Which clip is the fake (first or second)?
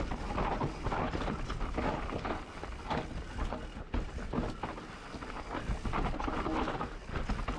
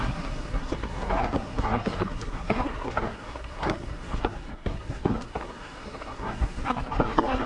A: second